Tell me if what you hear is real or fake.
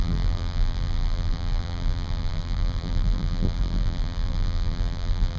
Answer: fake